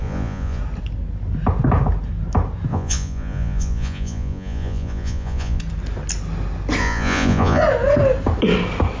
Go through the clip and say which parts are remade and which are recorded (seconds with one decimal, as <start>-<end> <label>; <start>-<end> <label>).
0.0-0.6 remade; 0.6-2.7 recorded; 2.7-5.6 remade; 5.6-6.8 recorded; 6.8-7.6 remade; 7.6-9.0 recorded